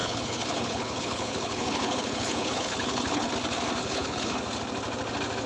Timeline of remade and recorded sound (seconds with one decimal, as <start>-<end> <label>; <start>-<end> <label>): 0.0-3.3 remade; 3.3-3.8 recorded; 3.8-4.4 remade; 4.4-5.5 recorded